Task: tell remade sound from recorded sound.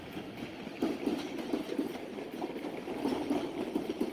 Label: recorded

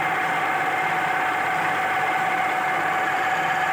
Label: recorded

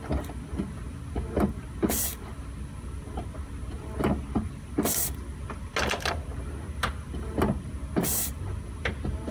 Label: recorded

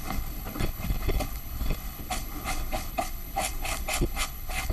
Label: remade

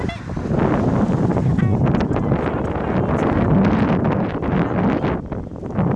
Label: recorded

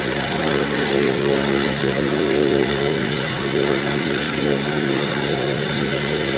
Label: remade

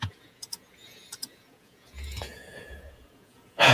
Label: remade